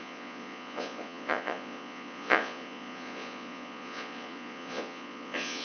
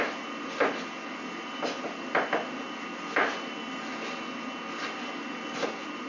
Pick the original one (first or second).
second